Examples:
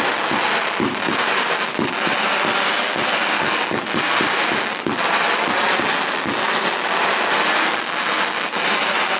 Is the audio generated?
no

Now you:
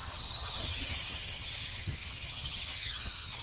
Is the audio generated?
yes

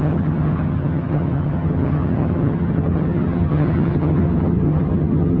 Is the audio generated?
yes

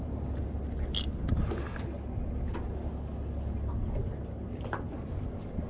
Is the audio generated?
no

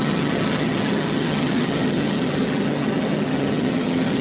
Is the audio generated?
yes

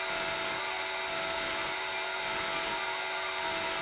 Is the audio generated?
no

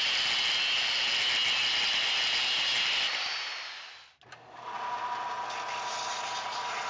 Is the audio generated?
no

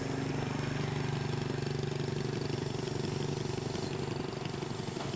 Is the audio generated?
no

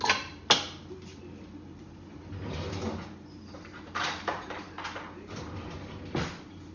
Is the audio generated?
no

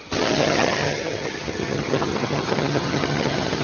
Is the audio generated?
yes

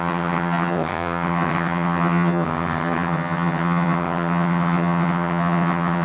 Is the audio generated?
yes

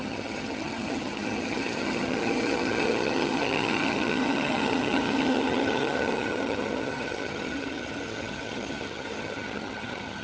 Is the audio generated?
yes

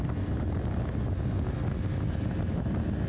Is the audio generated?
no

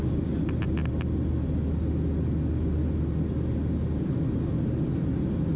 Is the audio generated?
no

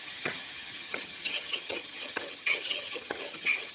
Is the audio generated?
yes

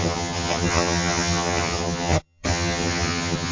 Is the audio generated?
yes